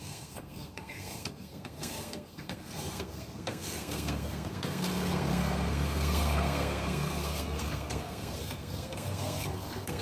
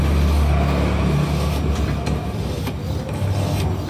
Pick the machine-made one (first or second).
first